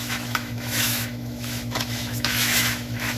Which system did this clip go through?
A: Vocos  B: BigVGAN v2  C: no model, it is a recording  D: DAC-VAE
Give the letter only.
D